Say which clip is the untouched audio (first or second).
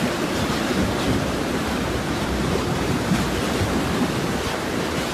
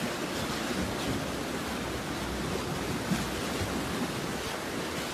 second